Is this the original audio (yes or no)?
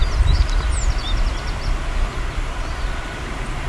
yes